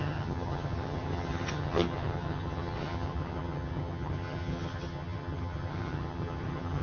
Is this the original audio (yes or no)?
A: no